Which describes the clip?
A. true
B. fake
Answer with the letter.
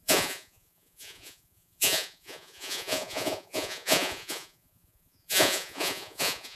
B